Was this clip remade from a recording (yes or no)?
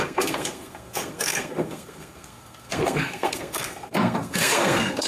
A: yes